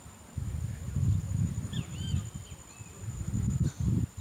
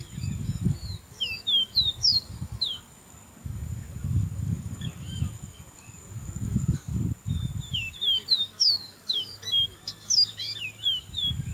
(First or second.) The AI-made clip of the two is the second